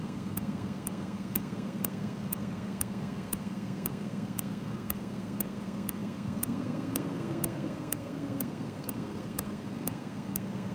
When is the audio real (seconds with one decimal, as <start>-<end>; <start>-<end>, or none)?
none